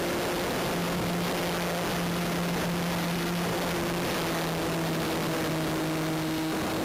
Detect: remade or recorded recorded